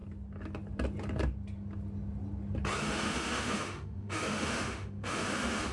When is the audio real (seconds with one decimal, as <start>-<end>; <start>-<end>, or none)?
0.0-2.8